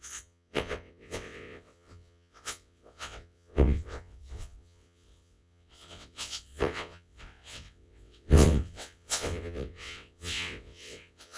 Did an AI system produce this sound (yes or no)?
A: yes